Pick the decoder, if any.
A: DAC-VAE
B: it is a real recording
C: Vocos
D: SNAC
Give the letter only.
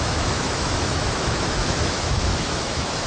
A